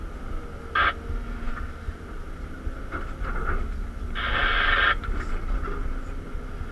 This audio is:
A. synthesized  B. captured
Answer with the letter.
B